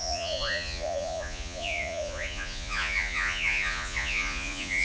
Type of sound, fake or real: fake